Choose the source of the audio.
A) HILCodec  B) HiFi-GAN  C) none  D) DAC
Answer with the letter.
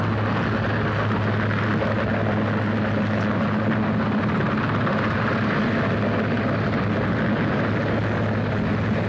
C